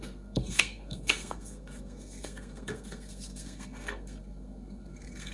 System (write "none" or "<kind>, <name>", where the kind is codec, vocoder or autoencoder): codec, SNAC